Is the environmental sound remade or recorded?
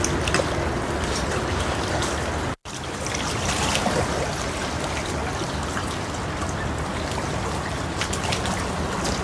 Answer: recorded